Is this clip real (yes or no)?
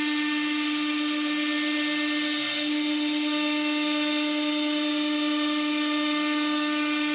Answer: yes